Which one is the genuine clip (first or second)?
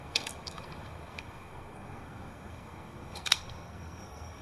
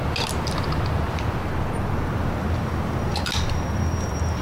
second